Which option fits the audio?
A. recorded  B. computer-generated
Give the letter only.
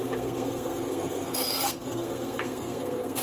B